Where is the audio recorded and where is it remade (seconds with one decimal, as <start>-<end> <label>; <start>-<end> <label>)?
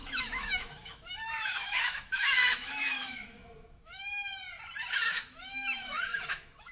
0.0-4.3 remade; 4.3-4.9 recorded; 4.9-6.7 remade